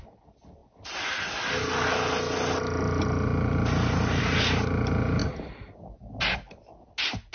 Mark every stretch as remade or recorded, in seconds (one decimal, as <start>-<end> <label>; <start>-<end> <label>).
0.0-7.3 recorded